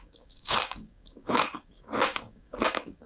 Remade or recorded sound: remade